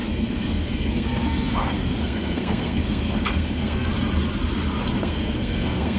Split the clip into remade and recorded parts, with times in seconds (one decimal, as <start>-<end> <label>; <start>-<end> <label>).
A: 0.0-3.9 remade; 3.9-5.0 recorded; 5.0-6.0 remade